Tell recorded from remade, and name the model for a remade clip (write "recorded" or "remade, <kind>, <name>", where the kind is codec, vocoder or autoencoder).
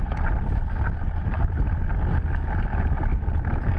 recorded